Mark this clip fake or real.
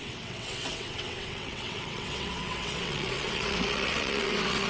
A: fake